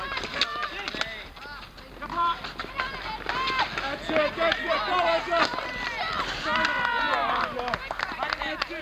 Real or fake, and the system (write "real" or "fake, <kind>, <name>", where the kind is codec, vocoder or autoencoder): real